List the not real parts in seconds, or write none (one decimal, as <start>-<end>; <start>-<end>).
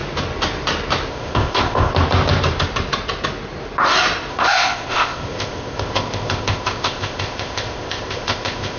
1.1-1.9; 4.3-8.8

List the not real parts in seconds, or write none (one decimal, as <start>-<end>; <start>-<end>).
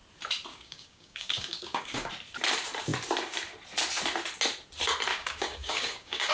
0.5-2.1; 5.1-6.3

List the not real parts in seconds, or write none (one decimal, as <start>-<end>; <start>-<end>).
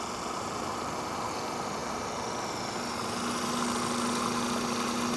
none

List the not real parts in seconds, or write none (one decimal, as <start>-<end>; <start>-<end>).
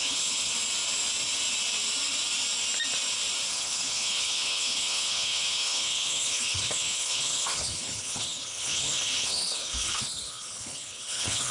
0.0-0.5; 3.5-11.5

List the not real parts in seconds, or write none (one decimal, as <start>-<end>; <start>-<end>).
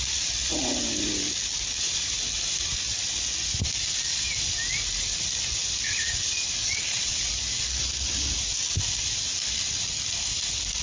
6.6-7.3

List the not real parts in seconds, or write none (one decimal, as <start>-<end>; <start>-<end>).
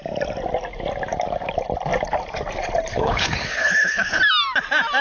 2.9-4.2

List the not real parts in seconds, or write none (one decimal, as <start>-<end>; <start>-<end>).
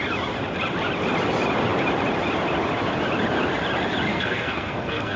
4.1-5.2